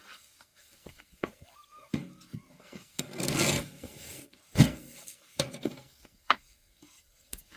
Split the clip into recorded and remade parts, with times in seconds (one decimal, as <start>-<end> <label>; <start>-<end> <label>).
0.0-7.6 remade